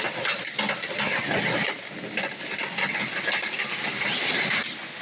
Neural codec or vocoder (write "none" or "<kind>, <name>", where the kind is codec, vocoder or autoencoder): none